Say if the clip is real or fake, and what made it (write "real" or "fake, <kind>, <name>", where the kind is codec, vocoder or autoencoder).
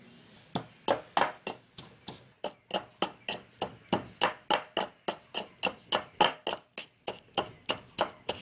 real